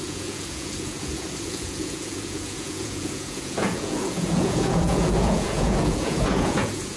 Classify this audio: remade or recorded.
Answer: remade